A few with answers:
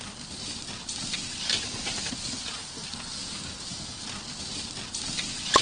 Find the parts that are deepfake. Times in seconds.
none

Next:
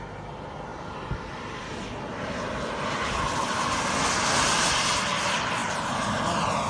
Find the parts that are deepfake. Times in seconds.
0.7-3.8 (vocoder, BigVGAN v2); 5.6-6.2

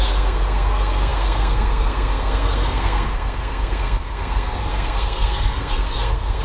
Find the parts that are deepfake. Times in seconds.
0.0-6.4 (codec, SNAC)

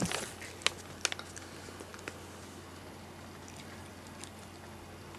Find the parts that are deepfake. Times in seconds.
none

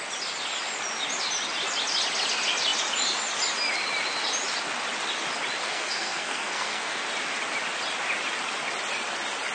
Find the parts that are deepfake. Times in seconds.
5.6-7.0 (codec, SNAC)

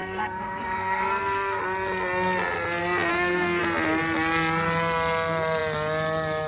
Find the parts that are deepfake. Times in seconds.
0.0-1.6 (codec, SNAC); 3.1-3.6